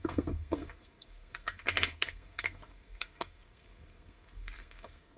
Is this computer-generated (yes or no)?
yes